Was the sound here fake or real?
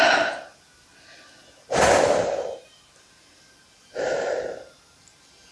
real